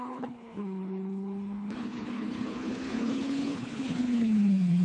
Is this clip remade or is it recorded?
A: remade